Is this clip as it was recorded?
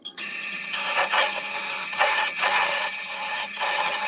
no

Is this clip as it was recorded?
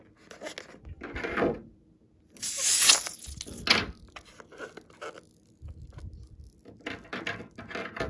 yes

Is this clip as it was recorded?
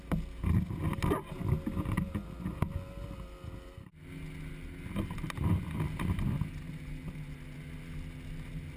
yes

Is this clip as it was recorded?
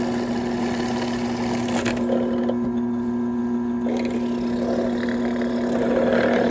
yes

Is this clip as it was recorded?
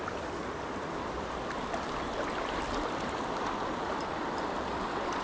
yes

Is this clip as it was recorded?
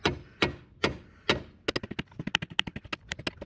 yes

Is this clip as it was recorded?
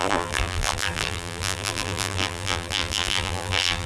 no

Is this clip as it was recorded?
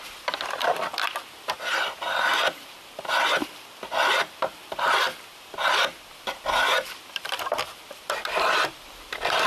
no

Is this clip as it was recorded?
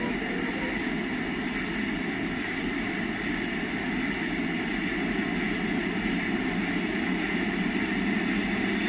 yes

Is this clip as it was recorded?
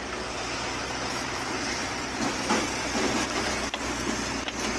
yes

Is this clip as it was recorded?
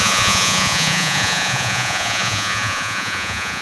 no